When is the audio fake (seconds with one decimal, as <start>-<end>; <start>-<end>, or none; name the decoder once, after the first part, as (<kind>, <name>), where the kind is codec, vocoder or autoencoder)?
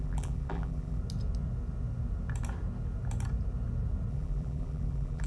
0.0-1.0 (vocoder, BigVGAN v2); 4.1-5.3